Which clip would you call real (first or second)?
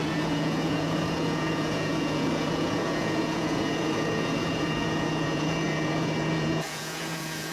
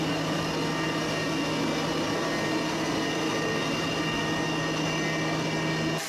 second